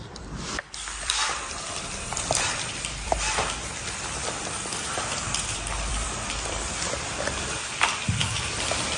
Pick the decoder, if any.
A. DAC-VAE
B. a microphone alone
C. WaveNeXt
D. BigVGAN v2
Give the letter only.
D